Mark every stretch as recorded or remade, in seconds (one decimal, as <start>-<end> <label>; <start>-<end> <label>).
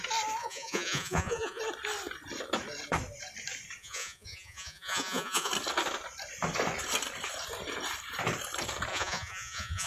0.0-0.4 recorded; 0.4-1.6 remade; 1.6-3.8 recorded; 3.8-5.5 remade; 5.5-8.9 recorded; 8.9-9.9 remade